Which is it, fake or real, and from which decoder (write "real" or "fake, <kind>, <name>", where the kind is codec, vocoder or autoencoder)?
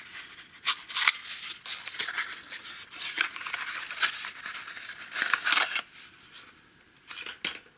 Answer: real